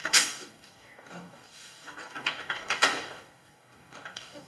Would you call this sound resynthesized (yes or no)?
yes